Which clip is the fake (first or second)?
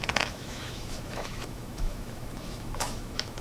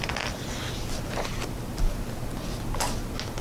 first